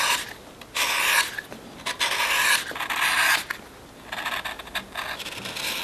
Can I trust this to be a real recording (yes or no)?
yes